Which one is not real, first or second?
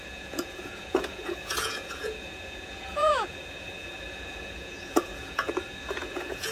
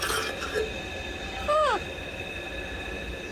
first